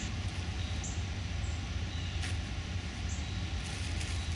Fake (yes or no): no